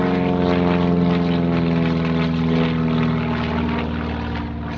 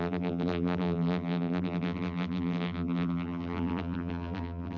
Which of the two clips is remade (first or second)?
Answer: second